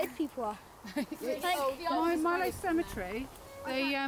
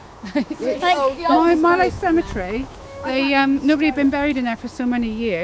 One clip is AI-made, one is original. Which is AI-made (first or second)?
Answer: second